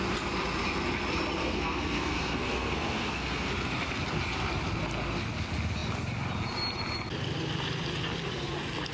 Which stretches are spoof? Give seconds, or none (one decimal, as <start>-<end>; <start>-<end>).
1.4-3.5